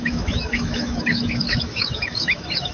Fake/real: fake